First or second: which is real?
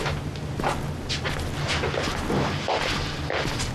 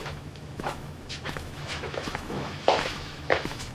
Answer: first